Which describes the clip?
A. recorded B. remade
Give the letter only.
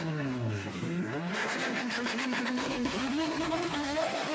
B